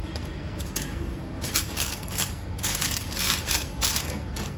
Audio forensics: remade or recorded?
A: remade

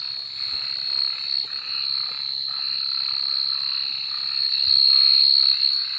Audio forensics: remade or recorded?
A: recorded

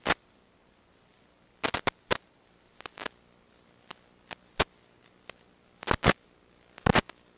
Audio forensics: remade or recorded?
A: recorded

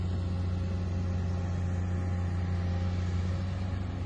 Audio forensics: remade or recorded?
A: recorded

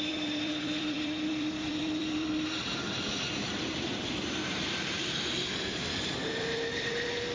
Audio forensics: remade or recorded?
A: remade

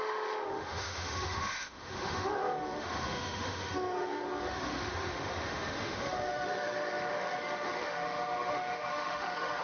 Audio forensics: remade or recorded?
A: remade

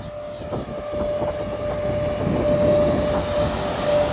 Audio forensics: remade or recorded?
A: recorded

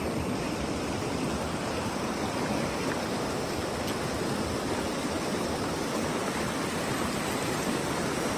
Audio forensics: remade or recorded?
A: recorded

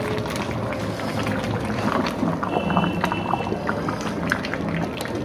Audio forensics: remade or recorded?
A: recorded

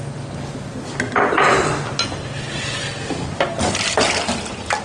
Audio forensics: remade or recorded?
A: recorded